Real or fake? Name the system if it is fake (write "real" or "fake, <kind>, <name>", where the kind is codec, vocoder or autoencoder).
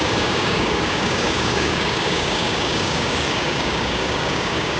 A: fake, codec, DAC